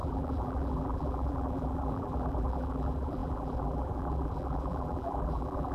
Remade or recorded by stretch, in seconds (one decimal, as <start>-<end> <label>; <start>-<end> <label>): 0.0-5.7 remade